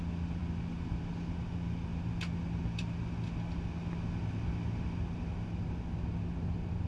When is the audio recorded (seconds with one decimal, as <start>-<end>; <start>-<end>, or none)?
0.0-6.9